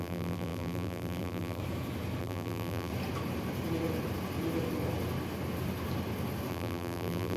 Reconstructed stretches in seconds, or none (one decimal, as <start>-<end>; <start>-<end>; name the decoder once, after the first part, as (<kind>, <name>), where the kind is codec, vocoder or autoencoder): 0.0-1.6 (vocoder, BigVGAN v2); 2.2-2.9; 6.5-7.4